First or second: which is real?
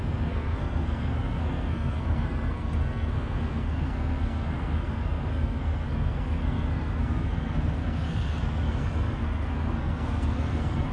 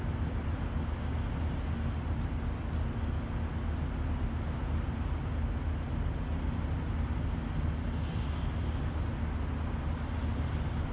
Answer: second